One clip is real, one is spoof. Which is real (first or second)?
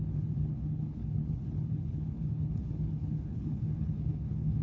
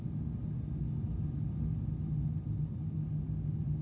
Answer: second